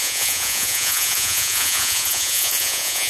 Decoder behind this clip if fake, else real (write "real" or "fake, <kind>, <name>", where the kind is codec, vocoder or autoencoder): fake, vocoder, Vocos